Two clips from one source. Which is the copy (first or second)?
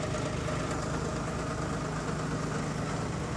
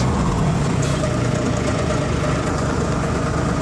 second